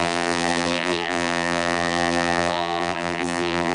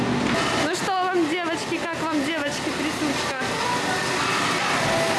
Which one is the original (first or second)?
second